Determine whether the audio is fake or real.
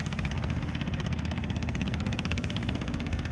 fake